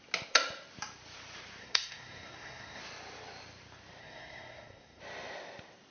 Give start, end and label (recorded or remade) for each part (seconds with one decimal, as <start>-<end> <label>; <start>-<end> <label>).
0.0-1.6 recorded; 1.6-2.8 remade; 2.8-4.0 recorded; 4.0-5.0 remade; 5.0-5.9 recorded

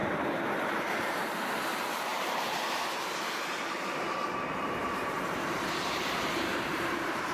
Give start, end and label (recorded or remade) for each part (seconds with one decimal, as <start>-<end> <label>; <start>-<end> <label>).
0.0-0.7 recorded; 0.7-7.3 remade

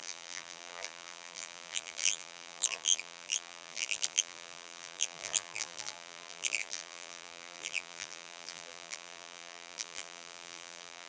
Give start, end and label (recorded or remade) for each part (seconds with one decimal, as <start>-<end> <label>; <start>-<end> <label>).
0.0-11.1 remade

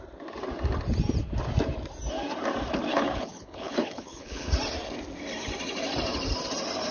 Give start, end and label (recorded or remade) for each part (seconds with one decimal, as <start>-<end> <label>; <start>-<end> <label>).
0.0-2.9 recorded; 2.9-4.5 remade; 4.5-6.9 recorded

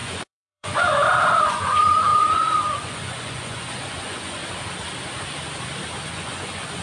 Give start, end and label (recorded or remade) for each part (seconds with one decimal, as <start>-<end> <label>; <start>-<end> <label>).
0.0-4.4 remade; 4.4-6.1 recorded; 6.1-6.8 remade

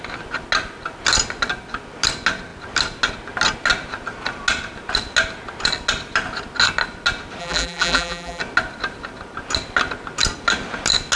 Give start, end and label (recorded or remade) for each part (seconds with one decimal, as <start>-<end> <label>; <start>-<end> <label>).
0.0-7.4 recorded; 7.4-8.4 remade; 8.4-11.2 recorded